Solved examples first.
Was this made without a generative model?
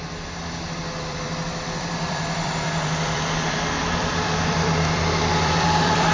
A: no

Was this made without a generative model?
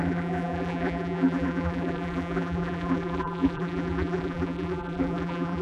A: no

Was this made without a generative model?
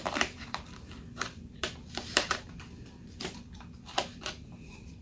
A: no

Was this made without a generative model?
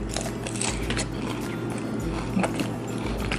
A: yes